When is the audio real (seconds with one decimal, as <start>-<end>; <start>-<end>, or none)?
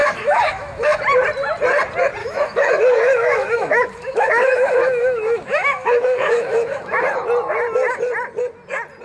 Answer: 1.0-2.2; 7.0-9.0